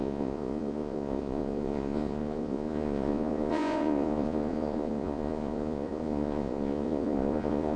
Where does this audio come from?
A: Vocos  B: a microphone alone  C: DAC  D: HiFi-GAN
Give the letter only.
A